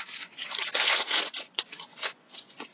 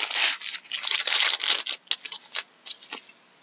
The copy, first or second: first